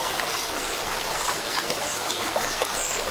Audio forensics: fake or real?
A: fake